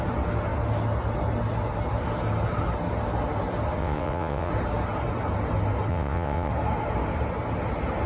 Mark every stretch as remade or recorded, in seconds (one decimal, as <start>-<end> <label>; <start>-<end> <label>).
0.0-3.8 recorded; 3.8-4.5 remade; 4.5-5.9 recorded; 5.9-6.5 remade; 6.5-8.1 recorded